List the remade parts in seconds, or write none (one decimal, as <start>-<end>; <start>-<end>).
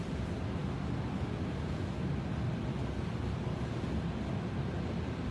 none